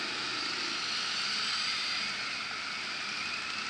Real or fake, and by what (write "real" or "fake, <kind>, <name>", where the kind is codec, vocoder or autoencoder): real